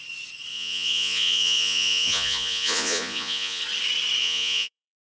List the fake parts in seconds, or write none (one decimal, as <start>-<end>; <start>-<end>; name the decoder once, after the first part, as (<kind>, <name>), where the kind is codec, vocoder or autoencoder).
0.5-3.6 (vocoder, Vocos); 4.2-5.1